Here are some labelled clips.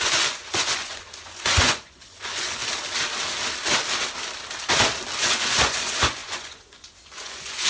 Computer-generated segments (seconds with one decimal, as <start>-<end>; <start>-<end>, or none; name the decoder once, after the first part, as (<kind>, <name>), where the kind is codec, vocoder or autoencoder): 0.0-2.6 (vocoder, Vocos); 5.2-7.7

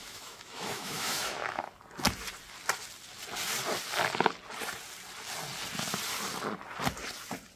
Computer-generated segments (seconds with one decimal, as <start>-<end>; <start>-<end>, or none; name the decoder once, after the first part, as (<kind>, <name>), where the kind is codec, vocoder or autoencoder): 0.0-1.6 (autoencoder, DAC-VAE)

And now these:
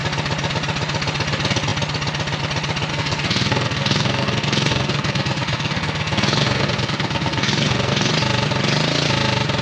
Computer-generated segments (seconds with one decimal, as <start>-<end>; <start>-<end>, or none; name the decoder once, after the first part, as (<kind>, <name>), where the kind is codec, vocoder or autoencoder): 2.9-8.1 (codec, SNAC)

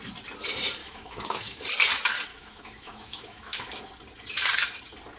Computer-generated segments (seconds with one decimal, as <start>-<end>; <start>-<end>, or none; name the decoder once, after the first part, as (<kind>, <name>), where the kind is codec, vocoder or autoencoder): 0.8-1.6 (autoencoder, DAC-VAE); 2.3-3.8

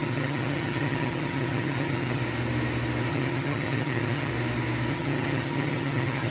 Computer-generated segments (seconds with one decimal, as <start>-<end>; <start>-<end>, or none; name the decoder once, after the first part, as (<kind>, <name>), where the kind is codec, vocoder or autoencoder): 0.0-2.2 (vocoder, HiFi-GAN); 3.1-4.3; 4.9-6.3

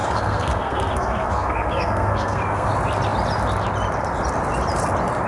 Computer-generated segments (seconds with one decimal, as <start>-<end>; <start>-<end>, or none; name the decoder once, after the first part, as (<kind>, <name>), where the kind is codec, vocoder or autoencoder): 0.0-2.7 (codec, SNAC)

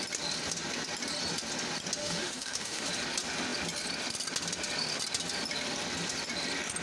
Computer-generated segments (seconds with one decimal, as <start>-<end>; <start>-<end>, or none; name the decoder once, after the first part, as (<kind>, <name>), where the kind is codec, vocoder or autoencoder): 2.0-2.9 (autoencoder, DAC-VAE)

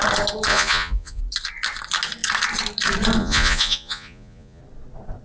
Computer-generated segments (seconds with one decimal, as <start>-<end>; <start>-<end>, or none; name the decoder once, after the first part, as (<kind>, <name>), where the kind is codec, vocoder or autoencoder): 0.5-1.2 (vocoder, Vocos); 3.2-4.6